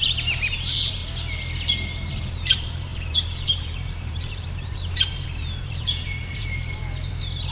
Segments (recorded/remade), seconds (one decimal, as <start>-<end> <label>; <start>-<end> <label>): 0.0-1.0 remade; 1.0-2.1 recorded; 2.1-7.5 remade